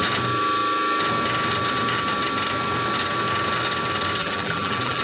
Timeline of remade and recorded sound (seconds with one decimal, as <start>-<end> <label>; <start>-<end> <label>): 0.0-4.2 recorded; 4.2-5.0 remade